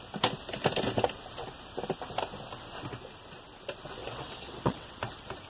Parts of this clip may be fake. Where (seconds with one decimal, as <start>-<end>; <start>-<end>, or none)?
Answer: 4.0-5.0